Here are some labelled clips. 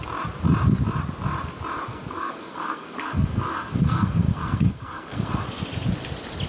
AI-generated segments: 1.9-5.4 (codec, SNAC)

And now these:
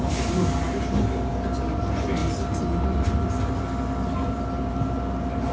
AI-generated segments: none